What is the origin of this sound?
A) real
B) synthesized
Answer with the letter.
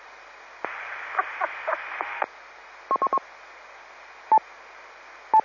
A